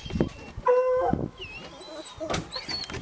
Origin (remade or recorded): recorded